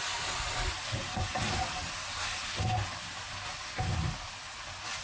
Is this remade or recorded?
recorded